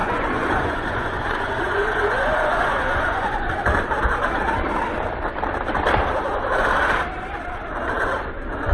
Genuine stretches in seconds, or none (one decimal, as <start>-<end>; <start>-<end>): 3.5-8.7